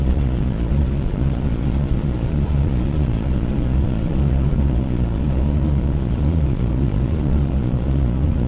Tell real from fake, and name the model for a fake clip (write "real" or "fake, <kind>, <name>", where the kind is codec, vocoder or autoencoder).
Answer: fake, vocoder, Vocos